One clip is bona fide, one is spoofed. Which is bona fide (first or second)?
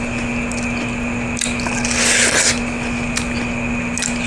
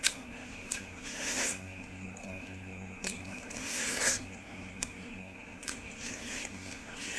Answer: first